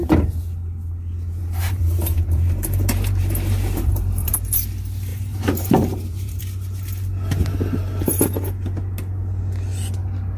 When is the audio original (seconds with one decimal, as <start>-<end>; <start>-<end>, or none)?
0.0-1.4; 4.3-5.1; 6.4-10.4